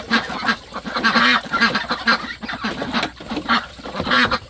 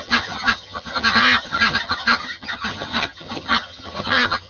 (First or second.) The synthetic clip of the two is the second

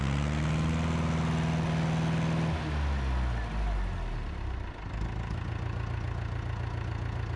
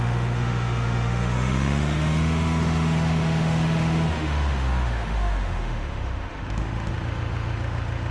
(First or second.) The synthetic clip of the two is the second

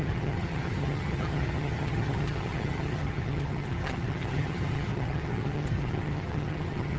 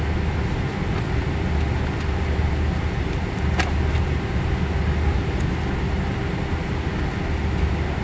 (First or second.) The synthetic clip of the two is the first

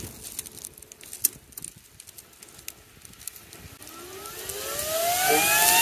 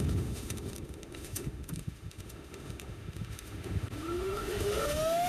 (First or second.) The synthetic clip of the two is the second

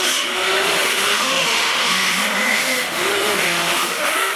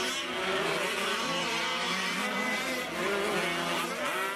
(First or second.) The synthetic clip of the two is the first